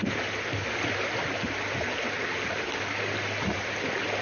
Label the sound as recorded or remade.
recorded